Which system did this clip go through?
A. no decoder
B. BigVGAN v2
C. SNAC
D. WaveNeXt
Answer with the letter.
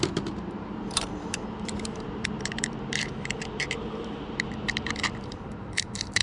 B